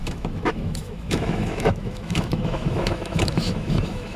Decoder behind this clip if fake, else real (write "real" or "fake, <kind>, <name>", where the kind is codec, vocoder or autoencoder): fake, autoencoder, DAC-VAE